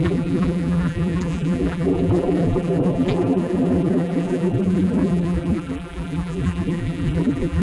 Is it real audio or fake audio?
fake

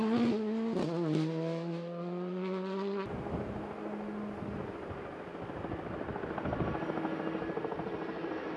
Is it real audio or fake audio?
real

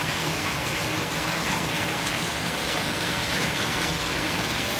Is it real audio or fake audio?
fake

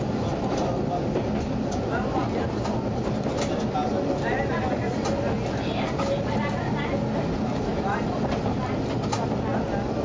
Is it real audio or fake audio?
real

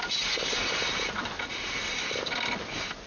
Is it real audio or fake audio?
real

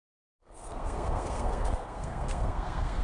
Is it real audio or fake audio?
fake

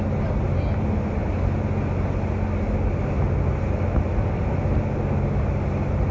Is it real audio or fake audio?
real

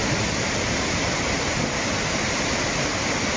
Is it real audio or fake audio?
real